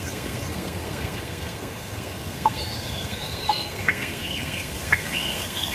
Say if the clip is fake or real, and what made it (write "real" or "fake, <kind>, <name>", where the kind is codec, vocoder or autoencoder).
fake, codec, SNAC